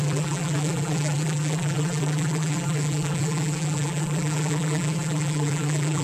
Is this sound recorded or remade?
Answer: remade